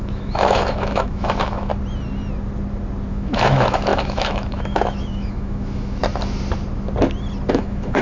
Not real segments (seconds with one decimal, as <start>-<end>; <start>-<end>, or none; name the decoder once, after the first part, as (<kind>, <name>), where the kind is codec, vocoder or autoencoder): 0.0-1.7 (autoencoder, DAC-VAE); 3.1-6.0; 7.5-8.0

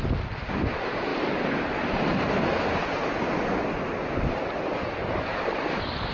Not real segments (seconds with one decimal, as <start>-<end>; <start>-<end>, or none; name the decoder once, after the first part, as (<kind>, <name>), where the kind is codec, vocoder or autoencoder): none

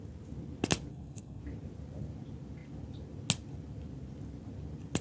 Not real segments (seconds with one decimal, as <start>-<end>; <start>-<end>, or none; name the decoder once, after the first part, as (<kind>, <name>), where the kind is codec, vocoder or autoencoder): 0.9-1.4 (codec, SNAC)

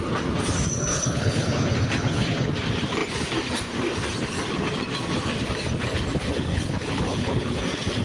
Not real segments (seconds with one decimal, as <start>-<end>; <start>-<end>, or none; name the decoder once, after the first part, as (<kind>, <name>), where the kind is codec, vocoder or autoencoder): 0.9-2.5 (codec, HILCodec); 6.5-7.6

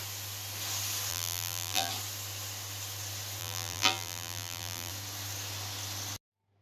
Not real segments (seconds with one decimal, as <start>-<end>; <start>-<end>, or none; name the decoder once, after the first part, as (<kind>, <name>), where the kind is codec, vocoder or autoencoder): 1.1-1.9 (vocoder, BigVGAN v2); 3.4-4.9